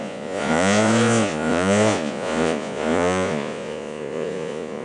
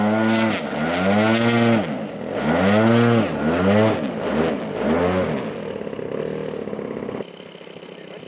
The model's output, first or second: first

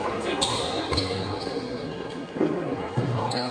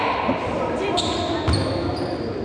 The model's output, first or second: first